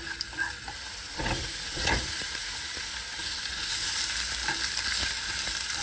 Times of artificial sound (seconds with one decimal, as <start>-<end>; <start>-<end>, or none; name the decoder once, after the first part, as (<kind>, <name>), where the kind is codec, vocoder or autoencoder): 0.5-4.0 (vocoder, Vocos)